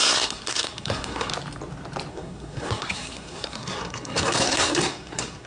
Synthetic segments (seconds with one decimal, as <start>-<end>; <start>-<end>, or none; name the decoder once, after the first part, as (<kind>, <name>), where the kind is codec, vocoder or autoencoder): 0.0-1.3 (codec, SNAC); 2.1-5.5